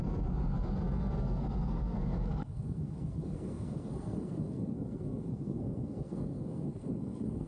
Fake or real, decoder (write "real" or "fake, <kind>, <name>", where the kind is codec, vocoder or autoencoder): fake, codec, SNAC